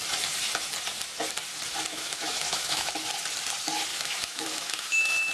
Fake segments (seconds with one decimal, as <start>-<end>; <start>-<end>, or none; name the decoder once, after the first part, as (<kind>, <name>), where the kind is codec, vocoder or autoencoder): 1.9-2.9 (autoencoder, DAC-VAE); 3.9-5.3